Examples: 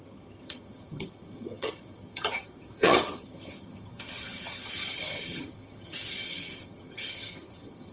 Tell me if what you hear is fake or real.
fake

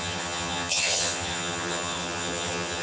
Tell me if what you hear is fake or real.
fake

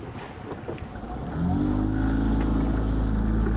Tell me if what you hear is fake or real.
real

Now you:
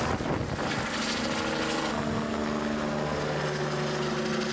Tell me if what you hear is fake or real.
real